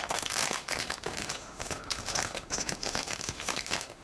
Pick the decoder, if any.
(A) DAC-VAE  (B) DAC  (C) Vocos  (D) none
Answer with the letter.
A